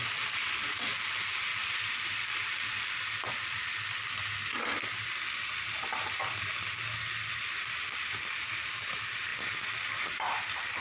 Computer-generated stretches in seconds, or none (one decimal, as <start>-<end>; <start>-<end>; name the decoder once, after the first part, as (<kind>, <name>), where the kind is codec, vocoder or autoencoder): 0.0-9.3 (vocoder, BigVGAN v2); 9.9-10.8